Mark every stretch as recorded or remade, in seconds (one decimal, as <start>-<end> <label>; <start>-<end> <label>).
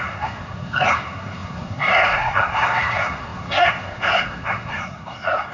0.0-5.5 remade